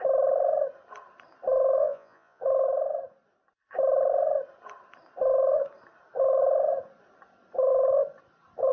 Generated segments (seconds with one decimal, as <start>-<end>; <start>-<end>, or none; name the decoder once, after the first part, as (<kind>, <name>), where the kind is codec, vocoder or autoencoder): 1.8-2.4 (vocoder, Vocos)